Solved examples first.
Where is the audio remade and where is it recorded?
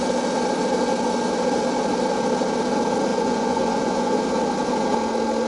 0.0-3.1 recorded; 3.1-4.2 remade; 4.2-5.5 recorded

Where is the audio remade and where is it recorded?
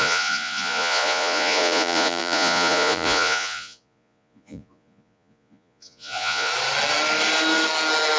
0.0-6.5 remade; 6.5-8.2 recorded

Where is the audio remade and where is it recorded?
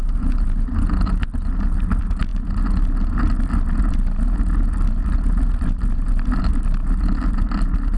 0.0-8.0 recorded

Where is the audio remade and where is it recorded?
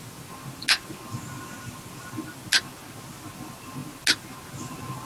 0.0-5.1 recorded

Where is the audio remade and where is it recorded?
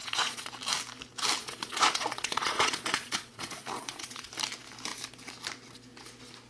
0.0-0.5 remade; 0.5-1.4 recorded; 1.4-4.3 remade; 4.3-6.5 recorded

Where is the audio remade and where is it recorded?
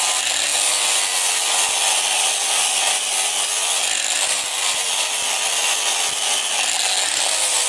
0.0-7.7 recorded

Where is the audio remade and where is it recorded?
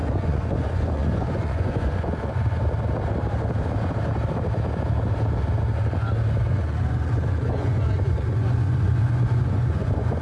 0.0-2.6 remade; 2.6-6.5 recorded; 6.5-10.2 remade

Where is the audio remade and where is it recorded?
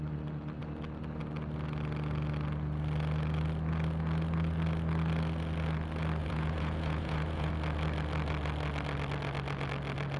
0.0-6.2 recorded; 6.2-7.5 remade; 7.5-10.2 recorded